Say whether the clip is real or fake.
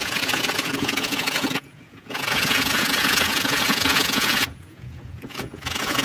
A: fake